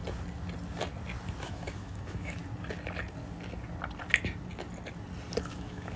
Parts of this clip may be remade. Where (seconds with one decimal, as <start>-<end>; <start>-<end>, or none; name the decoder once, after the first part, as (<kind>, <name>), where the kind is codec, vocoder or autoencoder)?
1.4-2.4 (autoencoder, DAC-VAE); 5.4-6.0